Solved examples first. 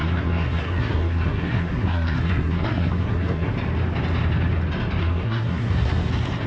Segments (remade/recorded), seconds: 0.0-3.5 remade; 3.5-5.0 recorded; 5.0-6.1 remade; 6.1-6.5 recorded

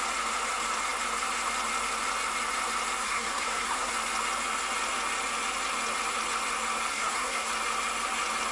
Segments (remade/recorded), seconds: 0.0-3.0 recorded; 3.0-3.9 remade; 3.9-6.9 recorded; 6.9-7.5 remade; 7.5-8.5 recorded

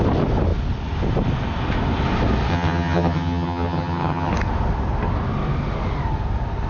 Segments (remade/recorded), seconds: 0.0-2.5 recorded; 2.5-4.3 remade; 4.3-6.7 recorded

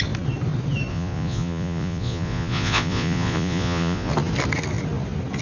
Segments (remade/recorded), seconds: 0.0-0.9 recorded; 0.9-4.1 remade; 4.1-5.4 recorded

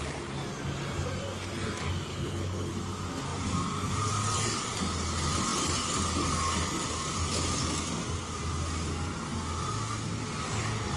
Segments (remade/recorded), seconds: 0.0-2.1 recorded; 2.1-2.7 remade; 2.7-11.0 recorded

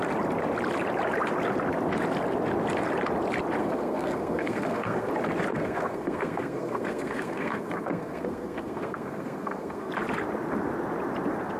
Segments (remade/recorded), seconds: 0.0-3.6 recorded; 3.6-5.1 remade; 5.1-5.5 recorded; 5.5-9.9 remade; 9.9-11.6 recorded

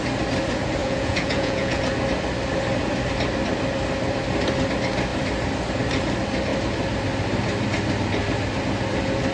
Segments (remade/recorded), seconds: 0.0-0.8 recorded; 0.8-1.8 remade; 1.8-9.3 recorded